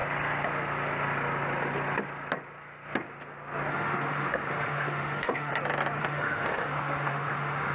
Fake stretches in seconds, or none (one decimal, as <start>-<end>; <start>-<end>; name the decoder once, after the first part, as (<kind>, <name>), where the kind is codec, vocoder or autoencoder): 3.7-5.5 (autoencoder, DAC-VAE); 6.0-7.7